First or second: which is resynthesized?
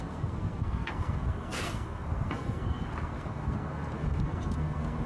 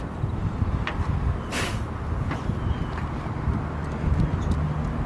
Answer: first